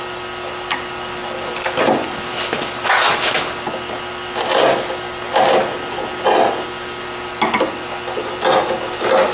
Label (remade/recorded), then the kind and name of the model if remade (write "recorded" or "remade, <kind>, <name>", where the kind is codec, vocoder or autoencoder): recorded